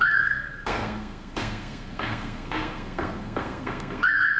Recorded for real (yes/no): no